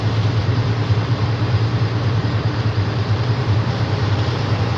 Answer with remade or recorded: remade